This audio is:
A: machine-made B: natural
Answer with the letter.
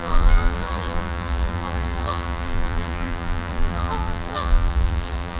A